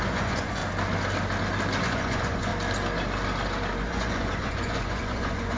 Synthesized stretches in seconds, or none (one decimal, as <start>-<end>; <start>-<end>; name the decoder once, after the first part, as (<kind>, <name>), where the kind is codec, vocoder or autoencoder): 0.0-0.6 (vocoder, Vocos); 1.8-2.5; 3.8-5.6